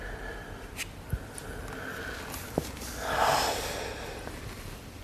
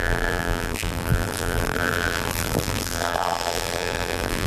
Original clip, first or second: first